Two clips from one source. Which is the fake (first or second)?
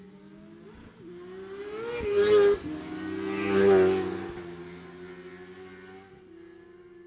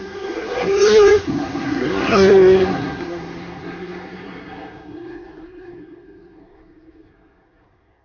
second